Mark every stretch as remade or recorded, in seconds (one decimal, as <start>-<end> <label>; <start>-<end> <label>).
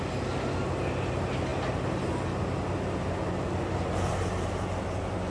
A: 0.0-5.3 recorded